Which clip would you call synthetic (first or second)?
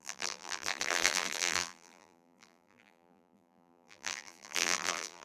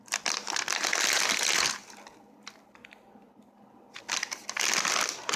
first